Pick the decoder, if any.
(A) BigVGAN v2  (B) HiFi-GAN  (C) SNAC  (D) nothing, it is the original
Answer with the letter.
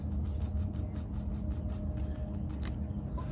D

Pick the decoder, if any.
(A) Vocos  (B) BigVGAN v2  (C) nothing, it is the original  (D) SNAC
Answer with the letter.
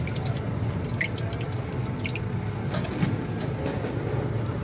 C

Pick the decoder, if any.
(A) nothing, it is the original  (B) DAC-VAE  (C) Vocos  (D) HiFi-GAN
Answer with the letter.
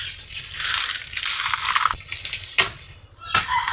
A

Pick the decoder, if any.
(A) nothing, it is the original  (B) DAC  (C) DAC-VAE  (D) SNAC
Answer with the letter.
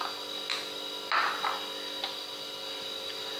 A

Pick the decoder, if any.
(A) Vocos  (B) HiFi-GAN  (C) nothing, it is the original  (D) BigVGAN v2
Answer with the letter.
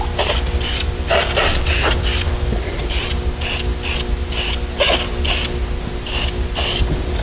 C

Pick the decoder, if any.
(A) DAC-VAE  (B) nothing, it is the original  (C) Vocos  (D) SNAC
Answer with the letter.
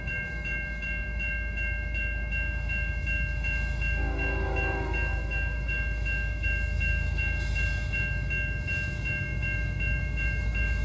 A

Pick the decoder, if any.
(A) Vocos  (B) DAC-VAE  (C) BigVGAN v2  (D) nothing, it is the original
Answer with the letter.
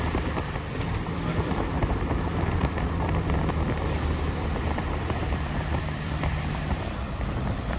C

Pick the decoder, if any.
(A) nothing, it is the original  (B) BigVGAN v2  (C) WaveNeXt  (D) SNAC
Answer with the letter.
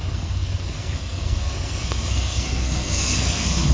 D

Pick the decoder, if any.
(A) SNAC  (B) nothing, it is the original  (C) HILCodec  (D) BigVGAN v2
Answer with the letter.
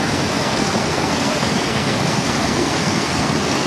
A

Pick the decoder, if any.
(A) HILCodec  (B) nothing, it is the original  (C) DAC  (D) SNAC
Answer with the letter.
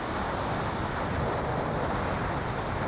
B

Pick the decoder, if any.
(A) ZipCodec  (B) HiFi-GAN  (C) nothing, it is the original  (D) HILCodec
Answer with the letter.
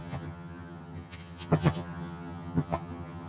B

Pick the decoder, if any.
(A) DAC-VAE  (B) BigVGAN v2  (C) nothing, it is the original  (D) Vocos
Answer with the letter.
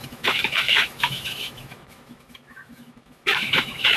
A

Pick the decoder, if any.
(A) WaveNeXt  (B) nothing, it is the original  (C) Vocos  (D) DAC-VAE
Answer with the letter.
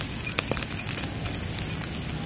B